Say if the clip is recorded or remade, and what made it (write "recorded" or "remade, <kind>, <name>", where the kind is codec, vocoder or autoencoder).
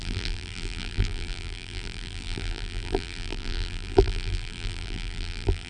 remade, vocoder, BigVGAN v2